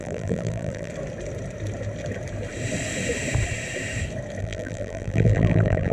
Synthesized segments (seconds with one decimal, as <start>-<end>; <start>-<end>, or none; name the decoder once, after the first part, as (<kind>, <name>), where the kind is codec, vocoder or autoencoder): 0.0-0.9 (vocoder, BigVGAN v2); 4.4-5.9